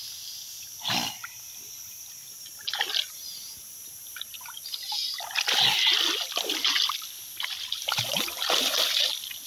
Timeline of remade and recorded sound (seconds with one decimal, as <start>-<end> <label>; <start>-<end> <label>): 0.0-9.5 recorded